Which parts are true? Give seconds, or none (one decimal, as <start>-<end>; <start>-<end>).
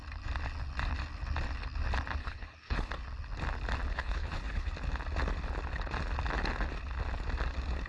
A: 0.0-2.2; 2.9-3.9; 4.7-7.9